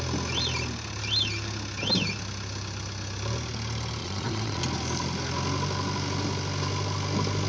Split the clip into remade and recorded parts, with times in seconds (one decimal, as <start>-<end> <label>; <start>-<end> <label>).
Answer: 0.0-4.0 recorded; 4.0-4.6 remade; 4.6-7.5 recorded